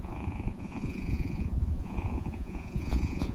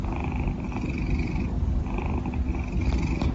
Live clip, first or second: second